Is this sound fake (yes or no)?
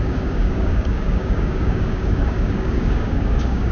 yes